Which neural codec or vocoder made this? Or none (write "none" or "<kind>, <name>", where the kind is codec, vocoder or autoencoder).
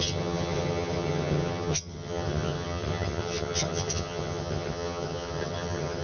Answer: vocoder, HiFi-GAN